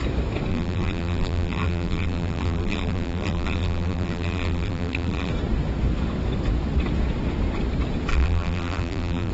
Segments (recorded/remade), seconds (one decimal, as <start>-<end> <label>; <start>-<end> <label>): 0.0-0.5 recorded; 0.5-5.3 remade; 5.3-8.1 recorded; 8.1-9.3 remade